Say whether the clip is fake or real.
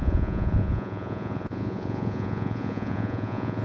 fake